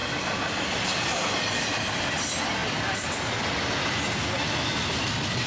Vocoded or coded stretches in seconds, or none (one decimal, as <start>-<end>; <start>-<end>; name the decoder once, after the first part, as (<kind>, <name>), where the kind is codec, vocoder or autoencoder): none